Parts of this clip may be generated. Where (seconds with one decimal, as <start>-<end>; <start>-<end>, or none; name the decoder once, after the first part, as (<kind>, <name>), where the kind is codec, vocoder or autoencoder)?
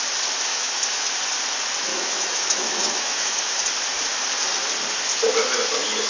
0.5-1.1 (autoencoder, DAC-VAE); 1.9-3.6